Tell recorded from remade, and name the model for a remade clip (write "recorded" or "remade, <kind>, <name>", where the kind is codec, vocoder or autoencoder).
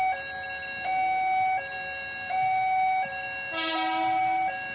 recorded